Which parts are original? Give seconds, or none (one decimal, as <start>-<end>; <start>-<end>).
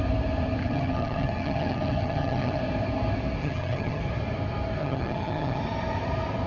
0.0-0.6; 2.6-3.4; 4.0-4.8; 5.6-6.5